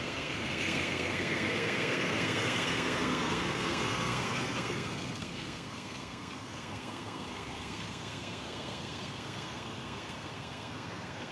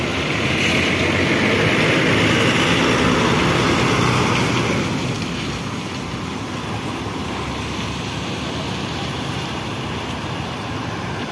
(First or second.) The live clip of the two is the second